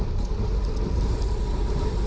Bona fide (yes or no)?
yes